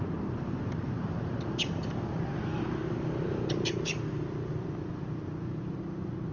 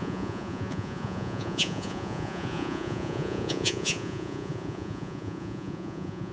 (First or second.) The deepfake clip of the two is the second